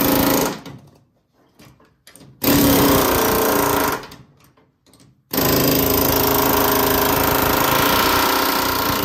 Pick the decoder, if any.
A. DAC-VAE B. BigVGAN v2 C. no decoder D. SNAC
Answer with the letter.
C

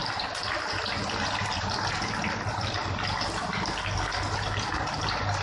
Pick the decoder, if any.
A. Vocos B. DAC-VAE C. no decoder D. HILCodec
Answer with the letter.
C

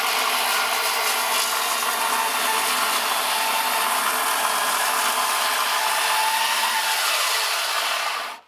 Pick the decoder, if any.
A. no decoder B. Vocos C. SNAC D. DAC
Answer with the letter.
A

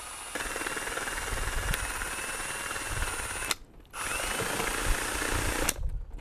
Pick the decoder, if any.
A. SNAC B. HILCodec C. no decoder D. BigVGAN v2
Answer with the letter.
C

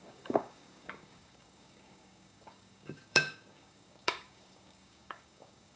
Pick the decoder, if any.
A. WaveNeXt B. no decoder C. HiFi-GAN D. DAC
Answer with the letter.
D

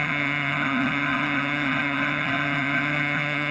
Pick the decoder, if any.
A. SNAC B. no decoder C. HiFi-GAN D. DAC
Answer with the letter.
C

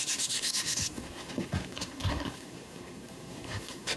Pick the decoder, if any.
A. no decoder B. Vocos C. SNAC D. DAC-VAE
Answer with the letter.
C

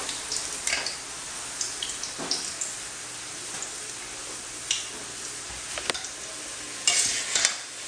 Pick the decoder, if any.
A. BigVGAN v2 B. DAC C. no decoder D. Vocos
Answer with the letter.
C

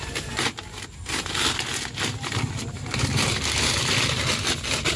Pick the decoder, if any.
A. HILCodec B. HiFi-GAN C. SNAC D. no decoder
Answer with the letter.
D